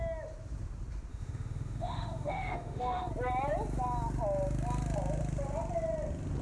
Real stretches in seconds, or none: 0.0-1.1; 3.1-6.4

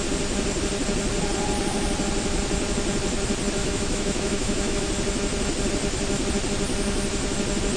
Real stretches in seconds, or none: 0.0-3.6; 4.9-7.8